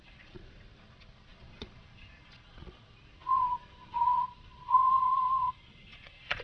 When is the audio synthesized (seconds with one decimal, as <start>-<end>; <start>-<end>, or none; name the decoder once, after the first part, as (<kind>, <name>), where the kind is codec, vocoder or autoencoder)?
0.0-6.4 (vocoder, Vocos)